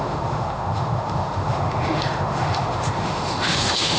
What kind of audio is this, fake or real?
fake